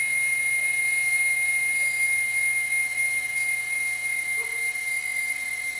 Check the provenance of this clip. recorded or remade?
recorded